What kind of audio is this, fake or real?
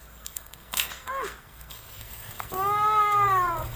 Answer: fake